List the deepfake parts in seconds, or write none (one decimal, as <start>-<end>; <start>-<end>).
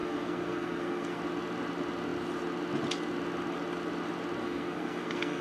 0.0-1.2; 4.4-5.4